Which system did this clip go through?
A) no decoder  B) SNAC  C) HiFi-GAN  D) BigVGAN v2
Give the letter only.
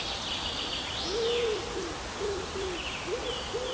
A